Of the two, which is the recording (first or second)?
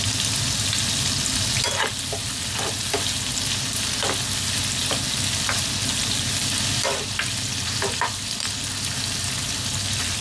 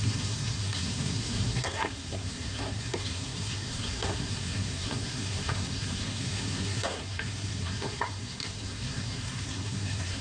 first